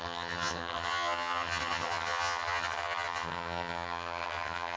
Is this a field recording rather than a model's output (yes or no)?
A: no